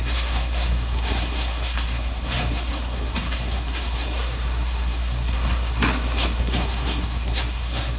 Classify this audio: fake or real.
fake